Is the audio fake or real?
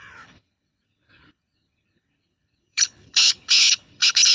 fake